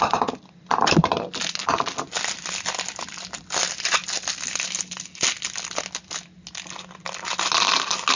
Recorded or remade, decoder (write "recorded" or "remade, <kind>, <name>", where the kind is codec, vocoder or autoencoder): recorded